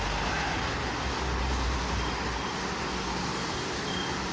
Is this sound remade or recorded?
recorded